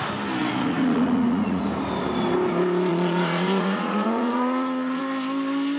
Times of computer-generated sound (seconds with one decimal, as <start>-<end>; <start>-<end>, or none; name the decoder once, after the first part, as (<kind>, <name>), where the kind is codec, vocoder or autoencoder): 0.4-1.6 (vocoder, Vocos); 2.9-5.0